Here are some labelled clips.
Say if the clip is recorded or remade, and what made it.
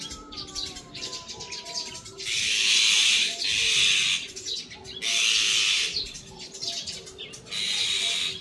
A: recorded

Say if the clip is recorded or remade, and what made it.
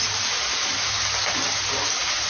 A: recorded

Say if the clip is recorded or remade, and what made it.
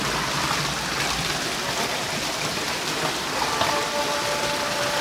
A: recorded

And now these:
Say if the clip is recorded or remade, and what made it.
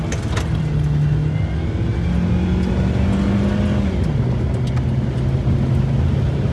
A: recorded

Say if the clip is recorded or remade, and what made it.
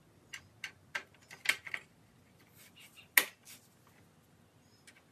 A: recorded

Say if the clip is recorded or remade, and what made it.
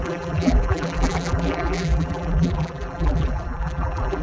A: remade, vocoder, BigVGAN v2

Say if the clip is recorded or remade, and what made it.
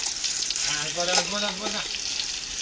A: recorded